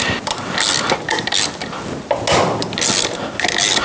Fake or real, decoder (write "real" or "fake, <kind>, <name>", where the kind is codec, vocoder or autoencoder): real